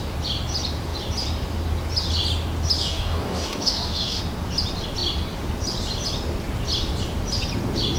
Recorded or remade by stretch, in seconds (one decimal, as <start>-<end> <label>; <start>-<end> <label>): 0.0-2.8 recorded; 2.8-4.2 remade; 4.2-8.0 recorded